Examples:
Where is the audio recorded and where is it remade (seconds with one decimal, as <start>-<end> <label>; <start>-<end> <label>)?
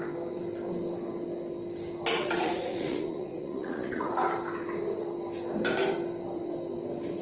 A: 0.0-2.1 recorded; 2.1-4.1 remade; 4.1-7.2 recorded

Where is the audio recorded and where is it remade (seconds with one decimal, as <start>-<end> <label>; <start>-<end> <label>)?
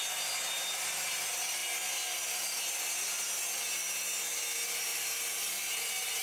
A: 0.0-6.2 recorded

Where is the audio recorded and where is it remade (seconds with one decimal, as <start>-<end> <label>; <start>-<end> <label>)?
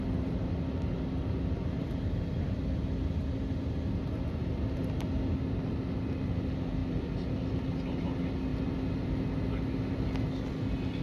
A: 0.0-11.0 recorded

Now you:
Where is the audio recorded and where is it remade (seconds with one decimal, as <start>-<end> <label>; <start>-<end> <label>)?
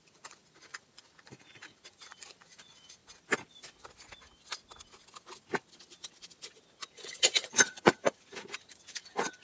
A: 0.0-3.0 remade; 3.0-6.8 recorded; 6.8-9.4 remade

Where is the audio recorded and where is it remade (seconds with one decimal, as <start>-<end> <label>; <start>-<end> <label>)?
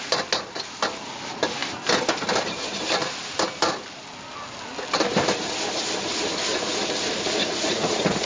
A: 0.0-7.4 recorded; 7.4-8.3 remade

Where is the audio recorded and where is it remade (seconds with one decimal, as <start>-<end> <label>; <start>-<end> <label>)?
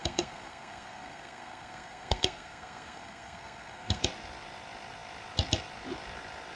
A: 0.0-4.0 remade; 4.0-6.6 recorded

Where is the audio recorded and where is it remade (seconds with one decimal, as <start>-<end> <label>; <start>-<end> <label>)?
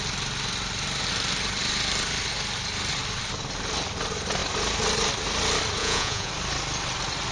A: 0.0-5.8 recorded; 5.8-6.3 remade; 6.3-7.3 recorded